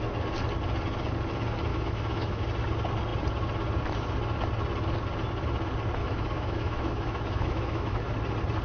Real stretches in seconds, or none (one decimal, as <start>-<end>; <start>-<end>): 0.0-1.7; 2.4-6.0; 8.1-8.6